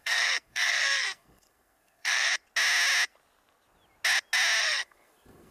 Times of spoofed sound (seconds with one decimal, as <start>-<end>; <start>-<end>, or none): 0.0-2.3; 4.6-5.5